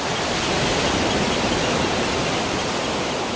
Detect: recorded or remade recorded